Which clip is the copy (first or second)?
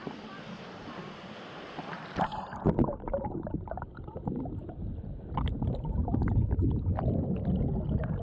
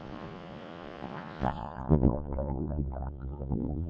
second